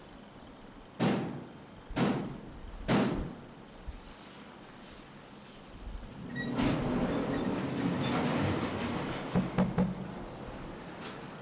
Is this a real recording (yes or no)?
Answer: yes